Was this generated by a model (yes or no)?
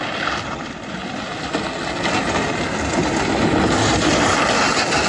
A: no